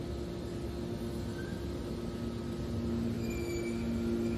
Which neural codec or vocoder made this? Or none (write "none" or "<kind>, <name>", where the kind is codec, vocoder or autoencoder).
none